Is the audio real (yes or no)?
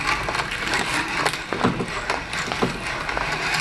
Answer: yes